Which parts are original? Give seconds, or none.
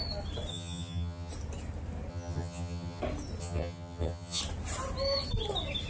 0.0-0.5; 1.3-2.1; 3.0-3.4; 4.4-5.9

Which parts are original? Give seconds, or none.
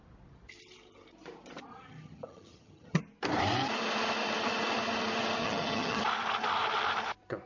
0.0-1.7; 3.0-5.4; 6.0-7.5